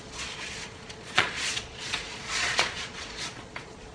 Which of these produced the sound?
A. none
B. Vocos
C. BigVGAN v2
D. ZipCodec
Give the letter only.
B